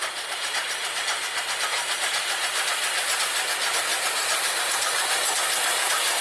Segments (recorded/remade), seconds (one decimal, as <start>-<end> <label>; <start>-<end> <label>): 0.0-6.2 recorded